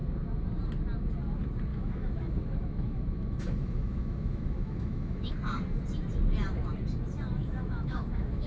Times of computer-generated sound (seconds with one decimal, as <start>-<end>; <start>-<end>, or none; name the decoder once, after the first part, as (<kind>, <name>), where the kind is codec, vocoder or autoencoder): 1.7-5.3 (autoencoder, DAC-VAE); 7.4-8.5